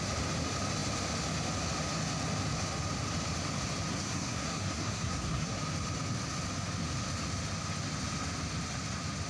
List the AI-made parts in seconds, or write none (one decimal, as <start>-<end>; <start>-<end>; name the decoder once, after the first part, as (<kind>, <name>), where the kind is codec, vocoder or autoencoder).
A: 3.9-5.6 (codec, SNAC)

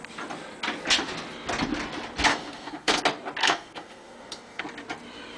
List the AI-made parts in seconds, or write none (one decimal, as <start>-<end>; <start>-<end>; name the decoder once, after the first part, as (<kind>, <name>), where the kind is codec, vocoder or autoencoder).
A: 2.3-3.0 (codec, SNAC); 3.4-4.6

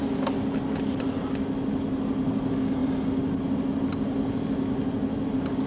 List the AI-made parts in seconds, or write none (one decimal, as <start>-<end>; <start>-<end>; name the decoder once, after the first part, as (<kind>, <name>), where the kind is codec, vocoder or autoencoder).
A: none

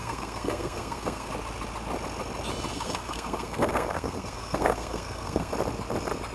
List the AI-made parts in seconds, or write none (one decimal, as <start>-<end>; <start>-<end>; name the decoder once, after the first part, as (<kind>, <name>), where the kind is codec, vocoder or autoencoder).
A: 0.0-1.3 (codec, SNAC); 2.7-5.5

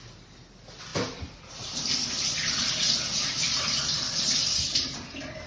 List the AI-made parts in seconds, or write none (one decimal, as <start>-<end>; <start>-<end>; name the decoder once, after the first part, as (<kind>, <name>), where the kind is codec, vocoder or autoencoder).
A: none

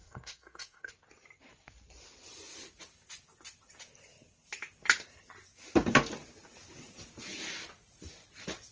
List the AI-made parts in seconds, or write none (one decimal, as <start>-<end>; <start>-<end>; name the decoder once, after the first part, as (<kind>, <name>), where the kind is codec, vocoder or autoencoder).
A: 0.0-0.9 (codec, SNAC)

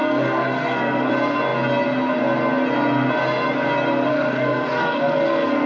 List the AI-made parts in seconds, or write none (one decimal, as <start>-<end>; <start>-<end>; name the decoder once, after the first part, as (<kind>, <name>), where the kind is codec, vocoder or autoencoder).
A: 0.0-1.1 (codec, SNAC); 4.1-5.7

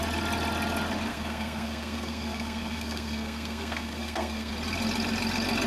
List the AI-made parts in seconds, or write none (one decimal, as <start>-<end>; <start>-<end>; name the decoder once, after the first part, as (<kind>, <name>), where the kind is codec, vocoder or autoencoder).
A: 1.1-4.5 (codec, SNAC)